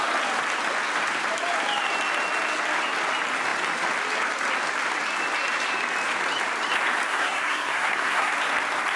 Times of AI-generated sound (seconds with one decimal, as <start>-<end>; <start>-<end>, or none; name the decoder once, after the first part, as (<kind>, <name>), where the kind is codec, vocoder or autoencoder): 7.1-8.3 (codec, SNAC)